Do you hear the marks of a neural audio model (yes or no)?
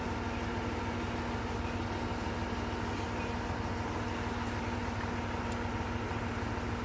no